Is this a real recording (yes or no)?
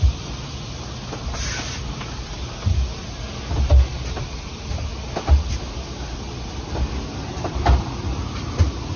yes